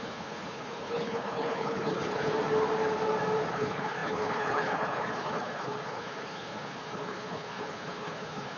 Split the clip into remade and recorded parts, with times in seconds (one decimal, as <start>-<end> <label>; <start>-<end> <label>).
0.0-2.3 remade; 2.3-3.5 recorded; 3.5-8.6 remade